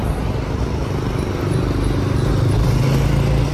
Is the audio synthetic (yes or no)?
no